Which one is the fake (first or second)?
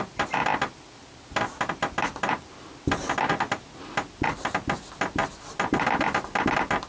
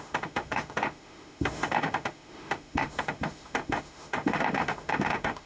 second